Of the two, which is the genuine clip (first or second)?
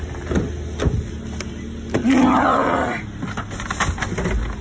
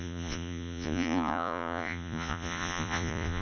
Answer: first